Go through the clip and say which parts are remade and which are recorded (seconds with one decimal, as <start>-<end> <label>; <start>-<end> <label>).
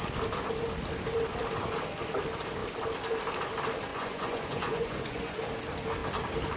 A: 0.0-3.9 recorded; 3.9-5.4 remade; 5.4-6.6 recorded